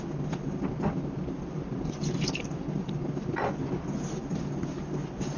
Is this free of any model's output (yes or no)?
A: yes